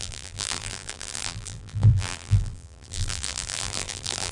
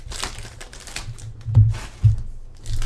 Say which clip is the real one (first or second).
second